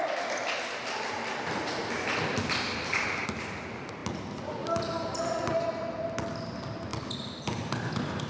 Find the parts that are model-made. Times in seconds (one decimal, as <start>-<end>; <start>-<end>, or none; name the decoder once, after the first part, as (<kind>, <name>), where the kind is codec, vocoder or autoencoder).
none